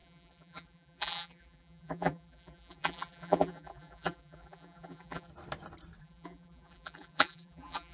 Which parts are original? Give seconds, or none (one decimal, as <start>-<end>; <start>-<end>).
5.3-6.0